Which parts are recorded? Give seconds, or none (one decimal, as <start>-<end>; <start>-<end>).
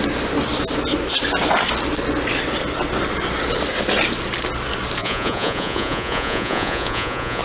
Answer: 0.0-5.0